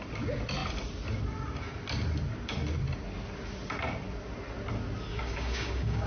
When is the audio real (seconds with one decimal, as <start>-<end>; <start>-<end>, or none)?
0.0-5.1

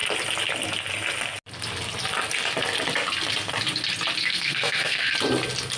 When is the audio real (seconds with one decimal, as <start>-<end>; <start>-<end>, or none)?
0.0-4.3; 5.1-5.8

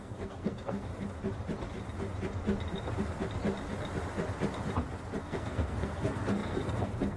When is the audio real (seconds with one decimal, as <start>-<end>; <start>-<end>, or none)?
0.9-5.2